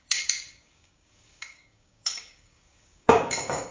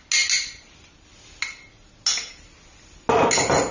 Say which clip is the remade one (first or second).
first